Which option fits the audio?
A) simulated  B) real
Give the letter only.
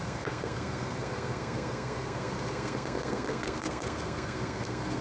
A